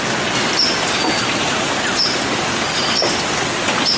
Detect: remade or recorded recorded